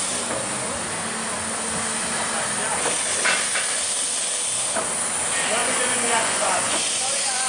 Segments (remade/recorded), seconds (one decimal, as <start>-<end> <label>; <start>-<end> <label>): 0.0-5.6 recorded; 5.6-7.5 remade